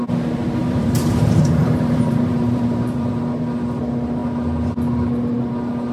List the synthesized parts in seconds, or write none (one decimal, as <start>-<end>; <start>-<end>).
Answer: 0.6-3.2